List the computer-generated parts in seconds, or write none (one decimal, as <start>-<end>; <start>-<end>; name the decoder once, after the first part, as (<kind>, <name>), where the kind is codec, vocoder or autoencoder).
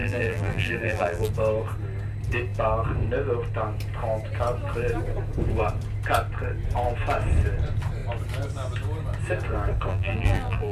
0.0-1.3 (vocoder, BigVGAN v2); 9.9-10.7